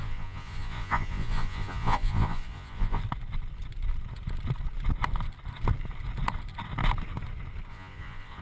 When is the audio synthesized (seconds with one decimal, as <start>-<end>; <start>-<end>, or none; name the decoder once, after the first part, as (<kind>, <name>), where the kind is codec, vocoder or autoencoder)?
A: 0.0-3.0 (vocoder, Vocos); 7.7-8.4